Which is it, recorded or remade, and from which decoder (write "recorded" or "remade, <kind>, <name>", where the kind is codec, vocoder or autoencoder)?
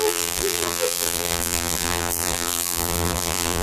remade, vocoder, BigVGAN v2